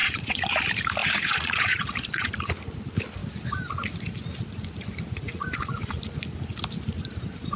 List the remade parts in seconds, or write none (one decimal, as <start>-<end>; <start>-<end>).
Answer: 0.0-0.6; 1.0-2.3; 5.1-6.0

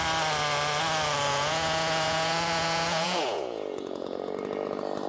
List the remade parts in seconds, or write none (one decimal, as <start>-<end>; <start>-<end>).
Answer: 1.3-4.3

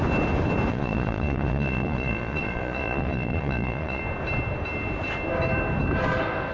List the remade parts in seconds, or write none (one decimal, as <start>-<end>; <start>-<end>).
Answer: 0.7-4.0

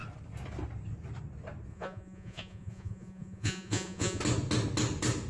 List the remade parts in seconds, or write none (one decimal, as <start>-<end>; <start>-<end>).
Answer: 1.7-4.2

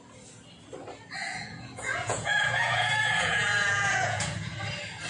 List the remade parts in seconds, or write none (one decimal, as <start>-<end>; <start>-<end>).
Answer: 1.2-4.3